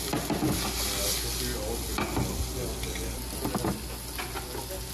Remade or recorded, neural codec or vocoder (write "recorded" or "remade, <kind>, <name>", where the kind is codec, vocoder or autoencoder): recorded